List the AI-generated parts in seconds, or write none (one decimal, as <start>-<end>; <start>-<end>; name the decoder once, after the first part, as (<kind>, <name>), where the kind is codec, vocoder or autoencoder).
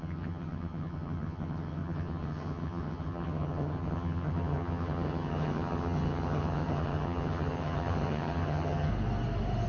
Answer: 0.0-8.9 (vocoder, HiFi-GAN)